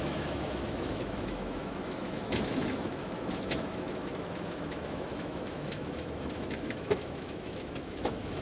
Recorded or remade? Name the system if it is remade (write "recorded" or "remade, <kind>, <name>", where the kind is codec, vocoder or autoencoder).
remade, autoencoder, DAC-VAE